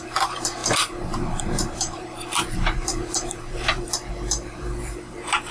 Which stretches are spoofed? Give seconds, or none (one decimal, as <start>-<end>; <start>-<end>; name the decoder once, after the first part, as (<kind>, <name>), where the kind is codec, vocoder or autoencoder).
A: 0.0-5.5 (vocoder, BigVGAN v2)